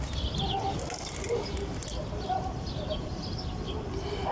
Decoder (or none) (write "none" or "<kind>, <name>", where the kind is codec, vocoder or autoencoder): none